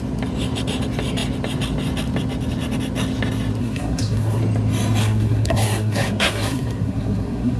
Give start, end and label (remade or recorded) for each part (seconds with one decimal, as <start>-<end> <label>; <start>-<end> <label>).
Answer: 0.0-3.6 recorded; 3.6-4.4 remade; 4.4-5.0 recorded; 5.0-7.6 remade